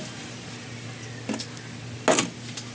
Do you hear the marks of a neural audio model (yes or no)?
no